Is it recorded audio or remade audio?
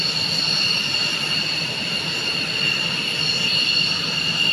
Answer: recorded